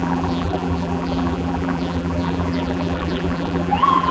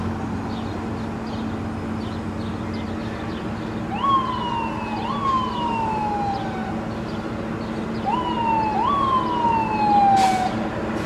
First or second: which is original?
second